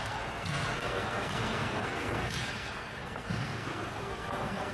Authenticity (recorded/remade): remade